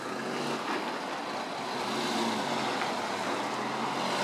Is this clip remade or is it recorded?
recorded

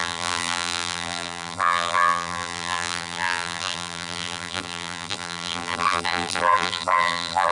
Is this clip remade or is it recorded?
remade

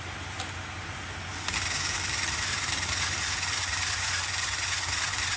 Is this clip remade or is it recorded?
recorded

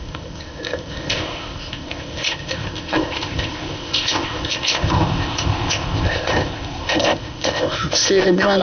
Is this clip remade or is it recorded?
remade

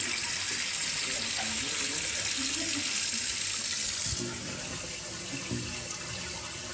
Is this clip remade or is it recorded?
recorded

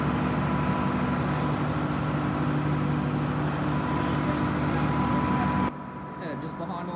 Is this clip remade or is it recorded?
recorded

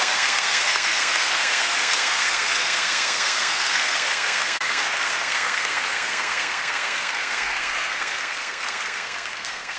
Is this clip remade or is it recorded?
remade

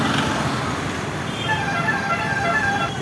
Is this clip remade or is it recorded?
remade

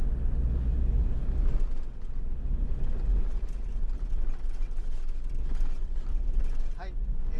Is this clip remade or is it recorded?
recorded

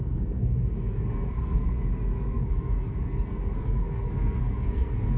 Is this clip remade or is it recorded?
remade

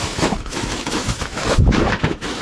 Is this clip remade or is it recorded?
remade